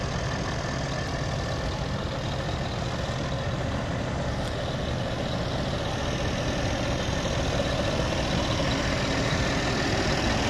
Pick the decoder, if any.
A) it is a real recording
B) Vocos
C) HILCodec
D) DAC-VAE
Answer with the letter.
A